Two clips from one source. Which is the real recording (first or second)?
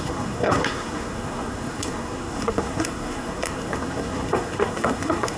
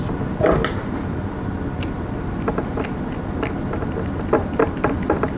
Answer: second